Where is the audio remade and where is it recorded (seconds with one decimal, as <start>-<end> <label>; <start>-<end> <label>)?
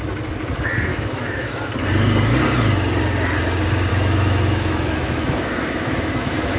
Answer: 0.0-0.9 recorded; 0.9-1.7 remade; 1.7-3.9 recorded; 3.9-6.6 remade